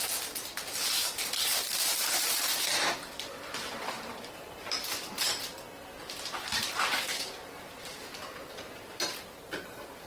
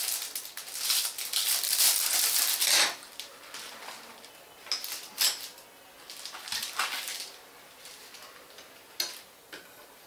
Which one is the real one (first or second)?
second